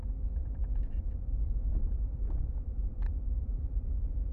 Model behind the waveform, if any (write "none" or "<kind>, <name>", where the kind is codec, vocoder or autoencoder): vocoder, BigVGAN v2